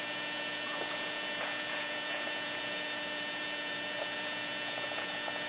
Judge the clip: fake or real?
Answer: fake